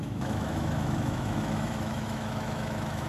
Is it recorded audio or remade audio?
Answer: remade